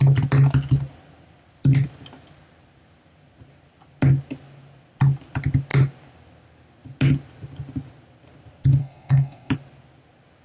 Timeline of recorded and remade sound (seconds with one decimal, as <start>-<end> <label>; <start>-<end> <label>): 0.0-8.8 recorded; 8.8-9.5 remade; 9.5-10.4 recorded